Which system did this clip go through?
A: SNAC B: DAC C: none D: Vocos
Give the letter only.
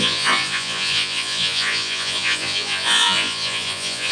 D